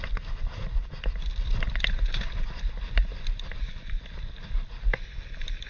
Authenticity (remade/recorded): recorded